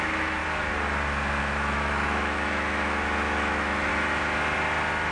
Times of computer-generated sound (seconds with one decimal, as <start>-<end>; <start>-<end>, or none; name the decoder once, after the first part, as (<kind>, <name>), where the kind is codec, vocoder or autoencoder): 0.0-0.4 (autoencoder, DAC-VAE); 1.4-3.9